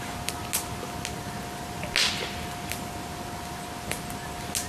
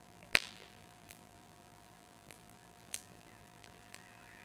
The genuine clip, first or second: first